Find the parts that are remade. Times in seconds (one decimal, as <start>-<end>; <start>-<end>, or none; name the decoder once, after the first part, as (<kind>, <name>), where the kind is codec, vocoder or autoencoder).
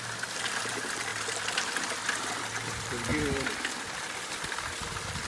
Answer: 0.0-1.1 (vocoder, BigVGAN v2); 2.1-5.3